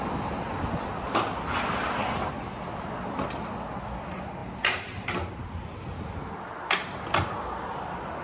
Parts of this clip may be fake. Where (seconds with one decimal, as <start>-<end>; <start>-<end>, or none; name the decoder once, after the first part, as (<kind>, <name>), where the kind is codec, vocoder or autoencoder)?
none